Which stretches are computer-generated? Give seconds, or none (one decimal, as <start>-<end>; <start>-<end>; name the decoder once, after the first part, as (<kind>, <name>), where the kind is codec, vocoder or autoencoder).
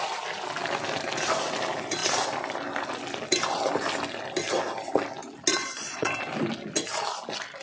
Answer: 5.5-6.1 (vocoder, Vocos)